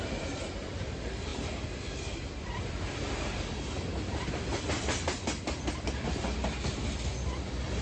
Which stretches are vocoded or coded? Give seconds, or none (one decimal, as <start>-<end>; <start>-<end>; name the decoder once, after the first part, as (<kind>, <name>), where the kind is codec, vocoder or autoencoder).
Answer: 0.0-1.3 (vocoder, BigVGAN v2); 4.6-7.8